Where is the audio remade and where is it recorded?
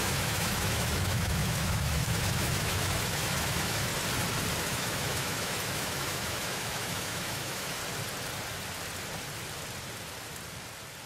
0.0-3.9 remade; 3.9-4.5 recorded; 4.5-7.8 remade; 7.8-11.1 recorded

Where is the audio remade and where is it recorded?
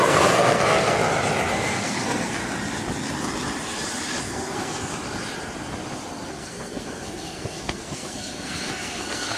0.0-1.0 remade; 1.0-1.5 recorded; 1.5-2.4 remade; 2.4-4.2 recorded; 4.2-4.9 remade; 4.9-6.3 recorded; 6.3-9.4 remade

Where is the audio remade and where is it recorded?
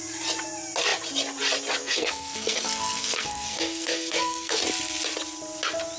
0.0-1.8 recorded; 1.8-4.6 remade; 4.6-6.0 recorded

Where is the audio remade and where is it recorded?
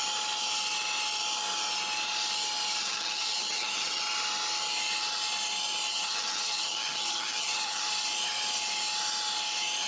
0.0-2.8 recorded; 2.8-4.0 remade; 4.0-5.9 recorded; 5.9-7.8 remade; 7.8-9.9 recorded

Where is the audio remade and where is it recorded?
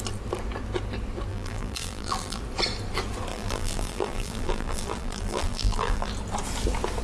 0.0-1.3 recorded; 1.3-2.4 remade; 2.4-3.3 recorded; 3.3-6.1 remade; 6.1-7.0 recorded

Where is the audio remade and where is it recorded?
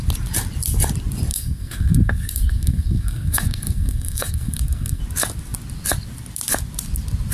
0.0-1.3 recorded; 1.3-5.0 remade; 5.0-7.3 recorded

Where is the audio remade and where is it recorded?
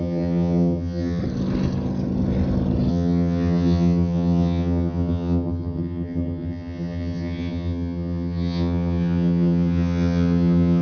0.0-1.2 remade; 1.2-2.9 recorded; 2.9-10.8 remade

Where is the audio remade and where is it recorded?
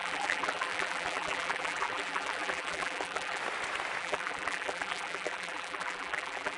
0.0-3.4 remade; 3.4-4.0 recorded; 4.0-6.6 remade